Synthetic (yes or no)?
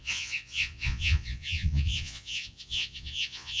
yes